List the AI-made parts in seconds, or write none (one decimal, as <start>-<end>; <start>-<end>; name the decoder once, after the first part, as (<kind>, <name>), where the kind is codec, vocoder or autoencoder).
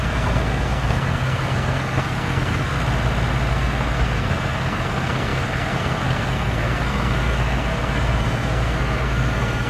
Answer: 0.0-2.7 (codec, SNAC); 3.5-9.7